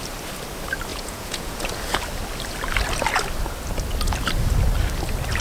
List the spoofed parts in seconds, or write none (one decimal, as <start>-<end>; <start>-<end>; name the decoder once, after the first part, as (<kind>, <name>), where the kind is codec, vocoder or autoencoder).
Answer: 0.9-1.6 (vocoder, Vocos)